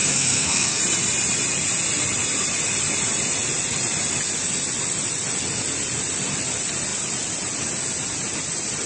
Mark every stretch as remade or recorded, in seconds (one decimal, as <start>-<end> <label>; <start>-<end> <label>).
0.0-0.8 remade; 0.8-8.9 recorded